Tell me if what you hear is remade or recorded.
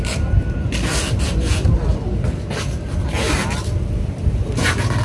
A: remade